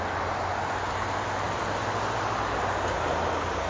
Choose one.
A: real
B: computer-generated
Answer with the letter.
A